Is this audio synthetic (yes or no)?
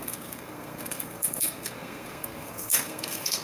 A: yes